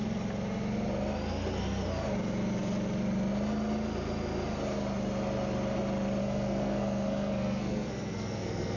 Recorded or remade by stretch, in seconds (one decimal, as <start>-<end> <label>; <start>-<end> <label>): 0.0-6.2 recorded; 6.2-8.8 remade